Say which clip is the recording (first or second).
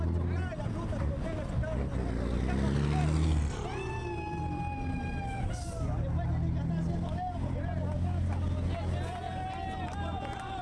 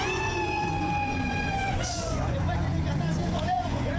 first